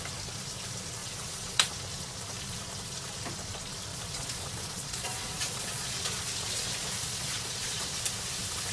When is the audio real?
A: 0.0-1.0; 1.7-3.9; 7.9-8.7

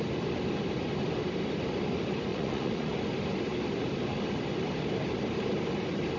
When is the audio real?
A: 0.0-2.3; 3.0-6.2

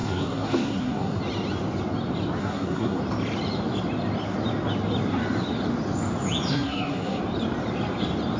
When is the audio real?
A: 1.2-2.4; 3.0-6.5; 7.2-8.4

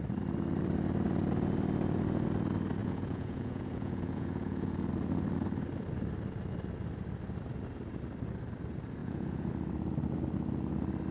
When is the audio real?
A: 0.0-2.8; 4.9-9.0; 9.5-11.1

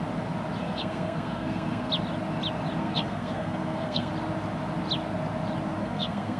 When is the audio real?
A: 0.0-0.6; 1.9-2.8; 4.1-5.8